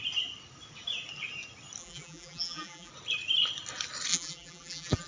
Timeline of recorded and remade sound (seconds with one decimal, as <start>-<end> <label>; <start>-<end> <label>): 0.0-1.8 recorded; 1.8-2.9 remade; 2.9-4.1 recorded; 4.1-5.1 remade